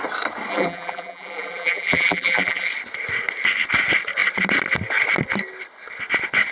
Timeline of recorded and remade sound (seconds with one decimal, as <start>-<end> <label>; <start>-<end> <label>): 0.0-0.5 recorded; 0.5-2.7 remade; 2.7-6.5 recorded